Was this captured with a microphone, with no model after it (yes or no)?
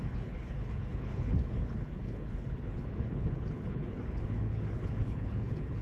no